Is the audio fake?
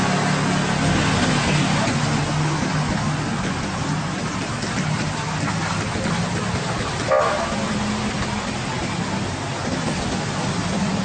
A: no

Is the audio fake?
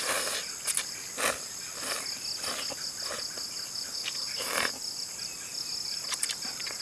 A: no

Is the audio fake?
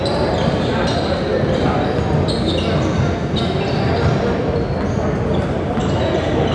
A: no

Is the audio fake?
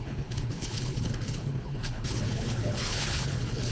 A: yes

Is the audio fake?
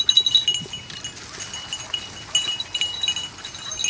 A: no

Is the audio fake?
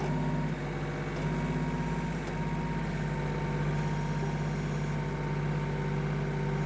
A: no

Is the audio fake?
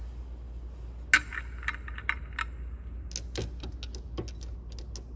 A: no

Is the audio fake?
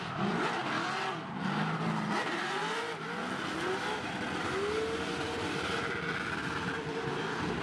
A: no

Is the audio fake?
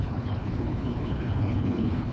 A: yes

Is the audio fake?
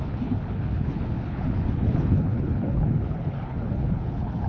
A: yes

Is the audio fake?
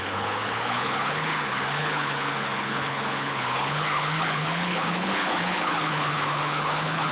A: yes